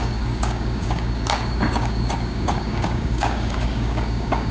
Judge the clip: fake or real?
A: fake